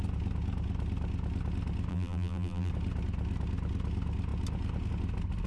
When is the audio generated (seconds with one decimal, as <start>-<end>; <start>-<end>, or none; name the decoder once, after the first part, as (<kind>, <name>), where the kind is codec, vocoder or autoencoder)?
1.9-2.7 (vocoder, BigVGAN v2)